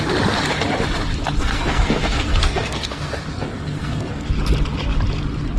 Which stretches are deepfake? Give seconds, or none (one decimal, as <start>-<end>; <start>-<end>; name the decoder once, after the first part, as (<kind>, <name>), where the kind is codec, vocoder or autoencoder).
1.4-4.3 (codec, SNAC)